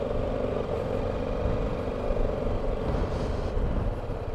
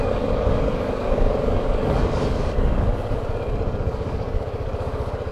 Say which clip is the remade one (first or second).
second